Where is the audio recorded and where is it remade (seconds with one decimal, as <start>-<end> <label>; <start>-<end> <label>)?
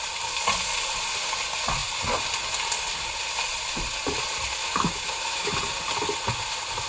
0.0-4.6 recorded; 4.6-5.5 remade; 5.5-6.9 recorded